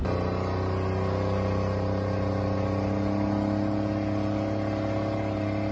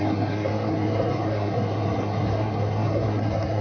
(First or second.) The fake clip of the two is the second